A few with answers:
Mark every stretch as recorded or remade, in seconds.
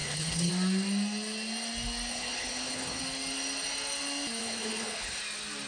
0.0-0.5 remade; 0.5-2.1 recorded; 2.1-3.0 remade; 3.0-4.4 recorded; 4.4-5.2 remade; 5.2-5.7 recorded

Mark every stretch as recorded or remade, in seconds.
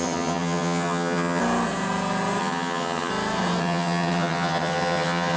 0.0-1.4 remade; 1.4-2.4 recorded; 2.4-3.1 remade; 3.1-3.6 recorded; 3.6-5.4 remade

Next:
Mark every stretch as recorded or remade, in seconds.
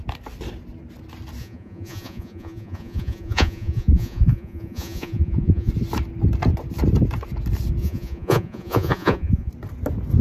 0.0-1.4 recorded; 1.4-5.7 remade; 5.7-7.8 recorded; 7.8-9.5 remade; 9.5-10.2 recorded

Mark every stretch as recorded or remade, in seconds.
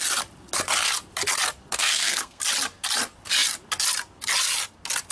0.0-1.7 recorded; 1.7-2.4 remade; 2.4-5.1 recorded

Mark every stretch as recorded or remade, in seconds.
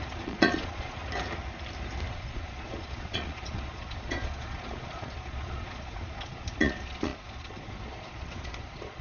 0.0-1.0 remade; 1.0-2.1 recorded; 2.1-9.0 remade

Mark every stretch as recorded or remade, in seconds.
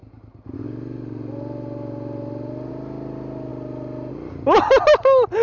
0.0-5.4 recorded